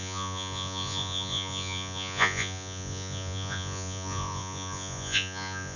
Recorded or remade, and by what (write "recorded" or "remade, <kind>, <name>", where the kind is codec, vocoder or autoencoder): remade, vocoder, Vocos